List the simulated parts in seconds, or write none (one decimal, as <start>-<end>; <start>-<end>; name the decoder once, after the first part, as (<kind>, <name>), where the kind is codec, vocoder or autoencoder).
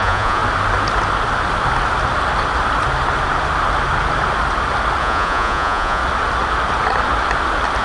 0.0-0.4 (vocoder, Vocos); 5.0-6.0